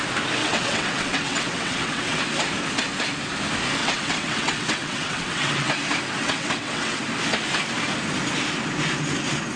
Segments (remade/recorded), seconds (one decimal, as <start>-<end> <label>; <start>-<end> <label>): 0.0-0.4 recorded; 0.4-2.2 remade; 2.2-3.8 recorded; 3.8-5.7 remade; 5.7-6.2 recorded; 6.2-7.0 remade; 7.0-9.6 recorded